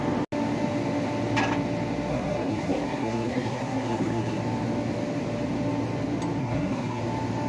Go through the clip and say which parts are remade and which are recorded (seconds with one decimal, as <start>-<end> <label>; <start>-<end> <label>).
0.0-2.1 recorded; 2.1-4.4 remade; 4.4-6.4 recorded; 6.4-7.0 remade; 7.0-7.5 recorded